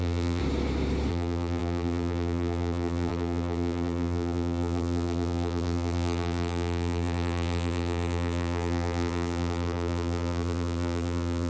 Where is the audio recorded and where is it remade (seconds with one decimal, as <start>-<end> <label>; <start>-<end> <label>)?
0.0-0.4 remade; 0.4-1.1 recorded; 1.1-11.5 remade